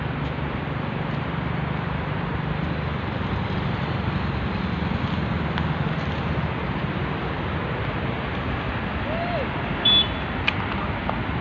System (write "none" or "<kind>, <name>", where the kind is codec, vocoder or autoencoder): none